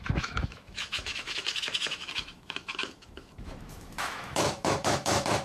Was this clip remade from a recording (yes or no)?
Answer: yes